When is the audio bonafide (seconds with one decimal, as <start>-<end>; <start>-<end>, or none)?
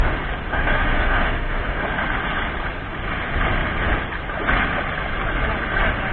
0.0-0.5; 1.8-6.1